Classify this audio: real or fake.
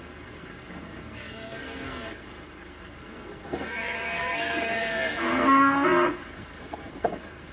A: fake